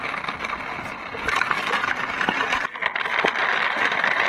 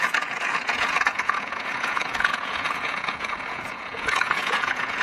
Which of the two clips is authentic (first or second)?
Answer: first